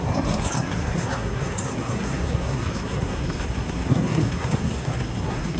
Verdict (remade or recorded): remade